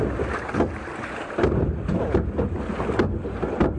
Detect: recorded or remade recorded